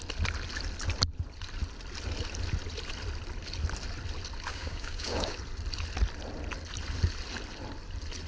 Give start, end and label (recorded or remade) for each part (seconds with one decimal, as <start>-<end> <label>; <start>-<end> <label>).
0.0-4.5 recorded; 4.5-5.4 remade; 5.4-8.3 recorded

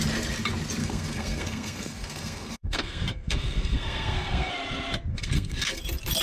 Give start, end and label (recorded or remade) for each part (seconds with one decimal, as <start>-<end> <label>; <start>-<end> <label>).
0.0-0.8 recorded; 0.8-4.5 remade; 4.5-5.1 recorded; 5.1-5.8 remade; 5.8-6.2 recorded

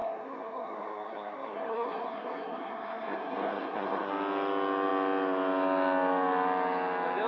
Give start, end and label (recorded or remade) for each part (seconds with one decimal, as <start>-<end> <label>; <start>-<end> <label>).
0.0-4.1 remade; 4.1-7.3 recorded